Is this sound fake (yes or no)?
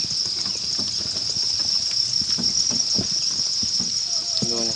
no